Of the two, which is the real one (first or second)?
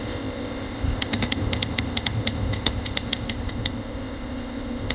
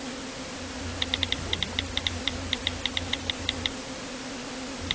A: second